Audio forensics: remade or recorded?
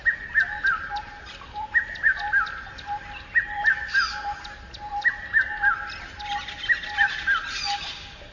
recorded